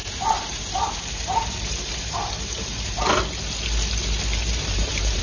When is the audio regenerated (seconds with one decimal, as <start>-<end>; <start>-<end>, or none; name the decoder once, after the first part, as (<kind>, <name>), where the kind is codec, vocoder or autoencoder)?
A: 0.0-3.1 (vocoder, BigVGAN v2); 4.5-5.2